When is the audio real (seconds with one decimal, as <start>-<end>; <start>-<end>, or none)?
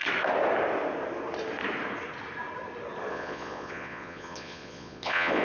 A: 0.0-3.1